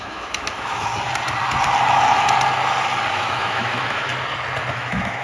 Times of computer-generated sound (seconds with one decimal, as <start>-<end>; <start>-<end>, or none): 0.0-0.9; 3.1-4.1; 4.7-5.2